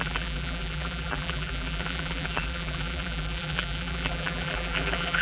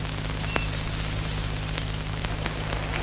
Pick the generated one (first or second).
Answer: first